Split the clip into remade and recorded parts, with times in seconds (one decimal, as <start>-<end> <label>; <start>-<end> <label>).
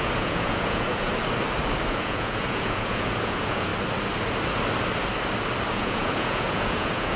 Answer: 0.0-1.1 remade; 1.1-1.9 recorded; 1.9-3.7 remade; 3.7-5.7 recorded; 5.7-7.2 remade